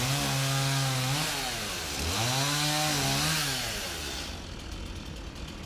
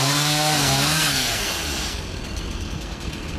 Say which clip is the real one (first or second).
first